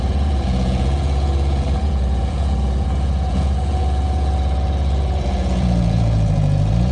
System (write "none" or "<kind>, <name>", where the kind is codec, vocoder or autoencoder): vocoder, Vocos